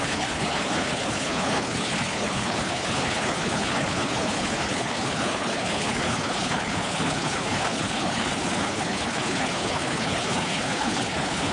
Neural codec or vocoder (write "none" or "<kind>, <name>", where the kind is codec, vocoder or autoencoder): codec, HILCodec